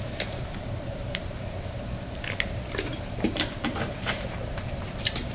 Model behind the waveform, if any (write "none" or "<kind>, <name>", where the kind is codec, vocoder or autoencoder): vocoder, BigVGAN v2